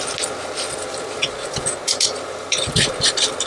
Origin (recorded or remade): recorded